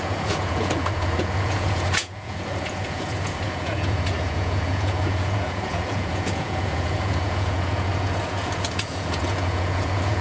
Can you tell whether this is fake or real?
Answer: fake